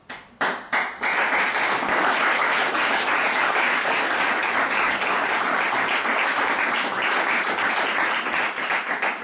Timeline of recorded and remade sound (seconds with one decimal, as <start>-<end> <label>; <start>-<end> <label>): 0.0-1.9 recorded; 1.9-5.3 remade; 5.3-9.2 recorded